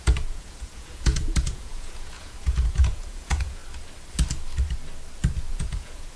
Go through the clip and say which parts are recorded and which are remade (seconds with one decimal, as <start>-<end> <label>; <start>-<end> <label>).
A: 0.0-3.6 remade; 3.6-5.5 recorded; 5.5-6.2 remade